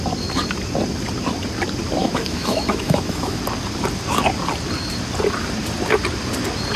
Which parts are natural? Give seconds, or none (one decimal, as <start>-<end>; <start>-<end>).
0.0-2.0; 3.4-6.8